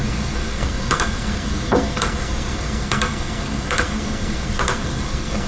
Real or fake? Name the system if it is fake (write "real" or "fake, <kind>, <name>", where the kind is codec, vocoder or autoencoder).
fake, codec, SNAC